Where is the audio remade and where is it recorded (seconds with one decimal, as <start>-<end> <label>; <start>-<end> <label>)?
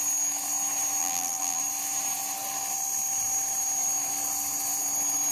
0.0-1.0 recorded; 1.0-1.6 remade; 1.6-5.3 recorded